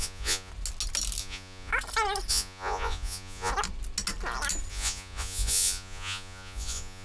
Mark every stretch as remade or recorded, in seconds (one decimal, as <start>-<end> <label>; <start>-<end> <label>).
0.0-0.5 remade; 0.5-1.2 recorded; 1.2-1.7 remade; 1.7-2.3 recorded; 2.3-3.5 remade; 3.5-4.7 recorded; 4.7-7.0 remade